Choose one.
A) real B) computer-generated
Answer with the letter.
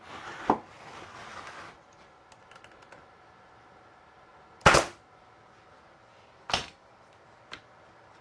A